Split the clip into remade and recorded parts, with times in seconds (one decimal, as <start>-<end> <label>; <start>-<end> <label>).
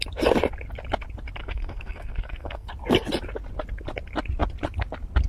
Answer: 0.0-1.4 recorded; 1.4-2.7 remade; 2.7-5.3 recorded